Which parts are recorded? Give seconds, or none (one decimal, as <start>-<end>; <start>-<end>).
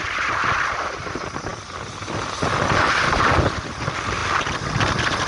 0.0-5.3